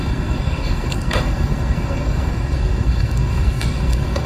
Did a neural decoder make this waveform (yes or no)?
yes